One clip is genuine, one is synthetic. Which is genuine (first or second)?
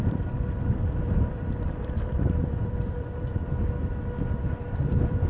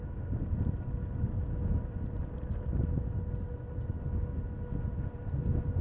second